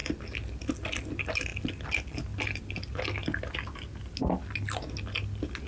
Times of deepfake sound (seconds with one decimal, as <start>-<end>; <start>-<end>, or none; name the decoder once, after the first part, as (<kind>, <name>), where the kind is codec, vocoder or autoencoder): none